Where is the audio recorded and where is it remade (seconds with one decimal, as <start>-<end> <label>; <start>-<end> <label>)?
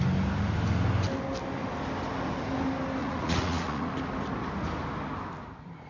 0.0-3.0 recorded; 3.0-3.9 remade; 3.9-5.9 recorded